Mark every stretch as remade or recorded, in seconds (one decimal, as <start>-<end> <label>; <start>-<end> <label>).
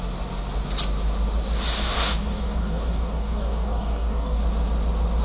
0.0-1.8 recorded; 1.8-4.4 remade; 4.4-5.2 recorded